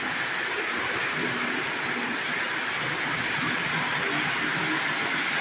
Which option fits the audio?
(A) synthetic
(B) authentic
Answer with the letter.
B